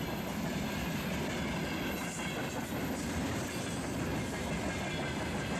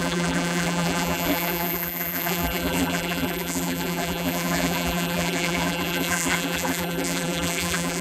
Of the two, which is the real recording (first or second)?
first